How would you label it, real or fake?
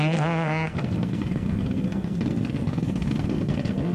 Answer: fake